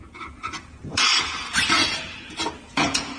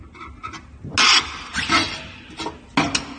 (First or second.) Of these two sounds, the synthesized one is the first